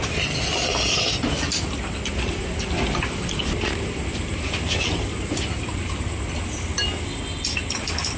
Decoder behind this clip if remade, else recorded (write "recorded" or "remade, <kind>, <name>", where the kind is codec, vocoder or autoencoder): recorded